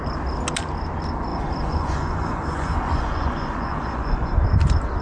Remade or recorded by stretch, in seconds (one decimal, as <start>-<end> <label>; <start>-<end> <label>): 0.0-1.3 recorded; 1.3-4.3 remade; 4.3-5.0 recorded